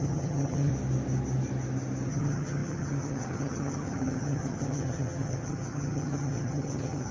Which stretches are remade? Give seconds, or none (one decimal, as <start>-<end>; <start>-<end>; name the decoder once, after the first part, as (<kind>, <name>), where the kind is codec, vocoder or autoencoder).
0.0-0.7 (vocoder, HiFi-GAN); 2.1-7.1